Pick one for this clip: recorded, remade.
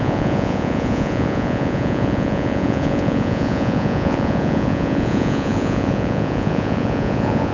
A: remade